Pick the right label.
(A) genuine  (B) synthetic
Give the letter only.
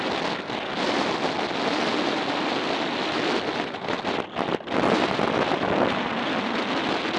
A